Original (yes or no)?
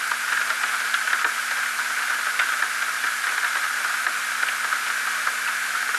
yes